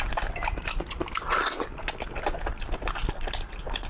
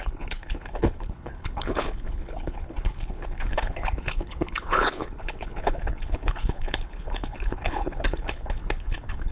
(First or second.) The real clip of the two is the first